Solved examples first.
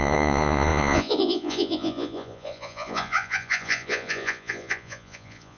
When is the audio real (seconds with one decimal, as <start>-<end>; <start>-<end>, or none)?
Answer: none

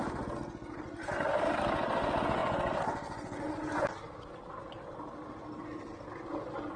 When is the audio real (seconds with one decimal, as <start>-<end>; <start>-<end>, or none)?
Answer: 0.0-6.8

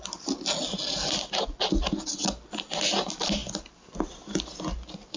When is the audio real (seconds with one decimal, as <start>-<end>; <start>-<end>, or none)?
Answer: 0.0-5.2

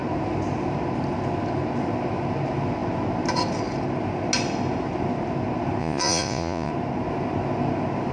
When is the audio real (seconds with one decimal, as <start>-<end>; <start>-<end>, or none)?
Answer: 0.0-5.8; 6.7-8.1

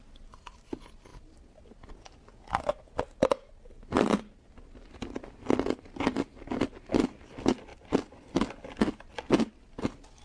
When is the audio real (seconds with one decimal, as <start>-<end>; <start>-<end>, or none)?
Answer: 0.0-10.2

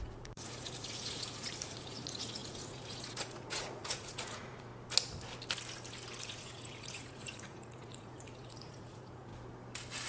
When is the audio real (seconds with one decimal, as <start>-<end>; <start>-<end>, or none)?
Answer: 4.7-6.2; 9.3-10.1

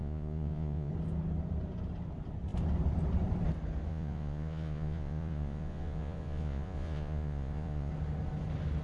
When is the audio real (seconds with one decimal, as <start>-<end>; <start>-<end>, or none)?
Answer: 0.9-3.9; 7.9-8.8